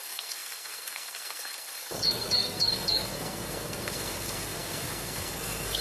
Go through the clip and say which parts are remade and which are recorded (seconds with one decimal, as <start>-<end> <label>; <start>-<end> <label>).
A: 0.0-5.8 remade